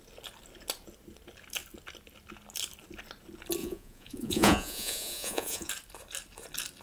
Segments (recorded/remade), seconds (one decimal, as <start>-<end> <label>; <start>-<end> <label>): 0.0-3.6 recorded; 3.6-5.7 remade; 5.7-6.8 recorded